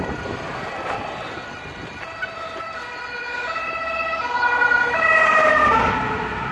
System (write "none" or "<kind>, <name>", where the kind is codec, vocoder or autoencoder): none